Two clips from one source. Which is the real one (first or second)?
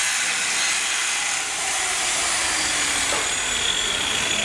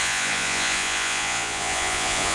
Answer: first